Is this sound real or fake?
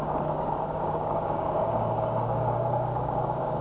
fake